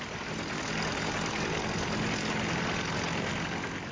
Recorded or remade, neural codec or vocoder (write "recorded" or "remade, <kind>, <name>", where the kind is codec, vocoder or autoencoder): recorded